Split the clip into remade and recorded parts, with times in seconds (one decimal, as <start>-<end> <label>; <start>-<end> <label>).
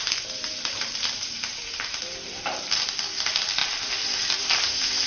0.0-5.1 remade